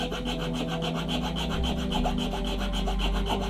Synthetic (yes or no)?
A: no